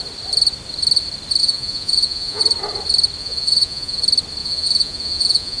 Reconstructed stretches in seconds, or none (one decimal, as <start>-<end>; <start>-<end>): 1.4-2.4; 3.2-4.0; 4.4-5.6